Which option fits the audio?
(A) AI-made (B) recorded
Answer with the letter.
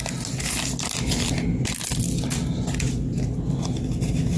B